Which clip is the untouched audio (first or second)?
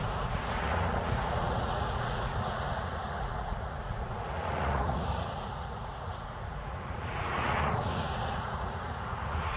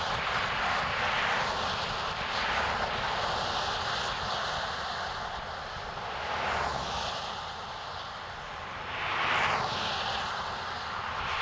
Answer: second